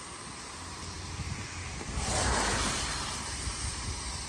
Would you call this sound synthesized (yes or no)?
no